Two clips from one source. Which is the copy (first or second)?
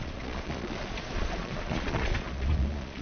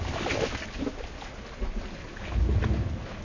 first